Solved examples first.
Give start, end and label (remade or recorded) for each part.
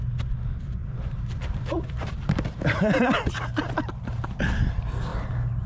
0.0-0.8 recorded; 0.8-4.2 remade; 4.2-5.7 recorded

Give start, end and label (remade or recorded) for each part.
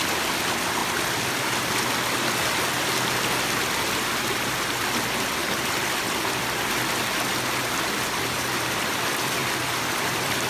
0.0-9.4 recorded; 9.4-10.5 remade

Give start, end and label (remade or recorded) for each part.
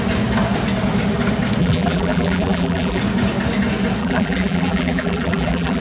0.0-1.6 recorded; 1.6-3.0 remade; 3.0-4.0 recorded; 4.0-5.8 remade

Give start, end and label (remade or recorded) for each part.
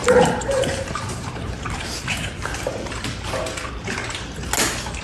0.0-2.3 remade; 2.3-5.0 recorded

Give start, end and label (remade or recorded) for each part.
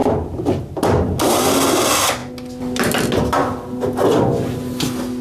0.0-5.2 recorded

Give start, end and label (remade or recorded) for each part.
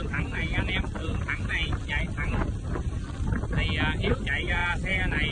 0.0-5.3 recorded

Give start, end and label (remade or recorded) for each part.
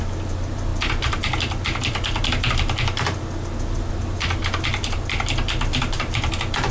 0.0-5.7 recorded; 5.7-6.3 remade; 6.3-6.7 recorded